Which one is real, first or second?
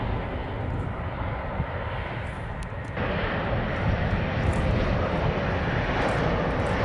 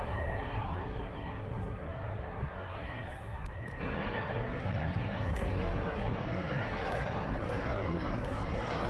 first